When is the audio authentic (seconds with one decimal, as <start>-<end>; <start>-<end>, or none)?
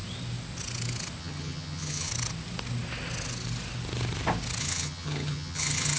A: 0.0-1.2; 2.1-4.6